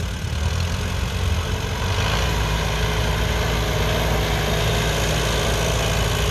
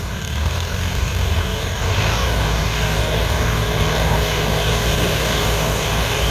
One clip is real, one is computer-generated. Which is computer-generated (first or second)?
second